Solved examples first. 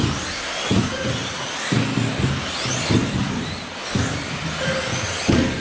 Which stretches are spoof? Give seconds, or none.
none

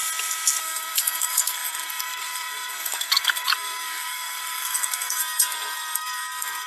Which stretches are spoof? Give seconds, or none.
0.6-6.7 (codec, SNAC)

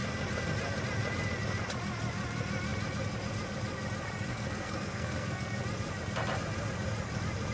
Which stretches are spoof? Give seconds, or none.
4.3-5.6 (codec, SNAC)

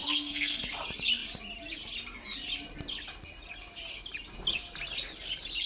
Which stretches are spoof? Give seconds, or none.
0.0-0.6 (codec, SNAC)

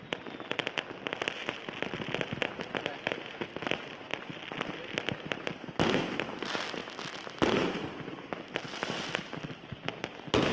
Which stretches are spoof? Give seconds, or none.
none

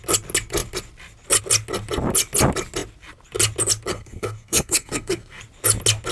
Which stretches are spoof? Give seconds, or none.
3.9-5.4 (codec, SNAC)

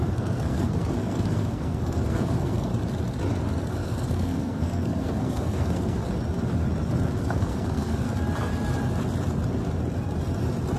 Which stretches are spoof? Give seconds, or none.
0.0-2.7 (codec, SNAC); 3.7-6.0; 7.2-8.1

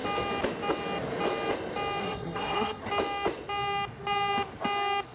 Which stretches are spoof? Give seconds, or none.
2.0-2.8 (codec, SNAC)